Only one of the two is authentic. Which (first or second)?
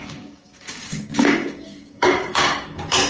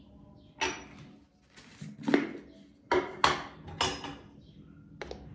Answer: second